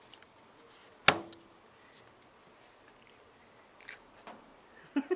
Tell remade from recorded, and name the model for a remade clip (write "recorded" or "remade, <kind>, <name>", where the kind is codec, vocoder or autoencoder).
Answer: recorded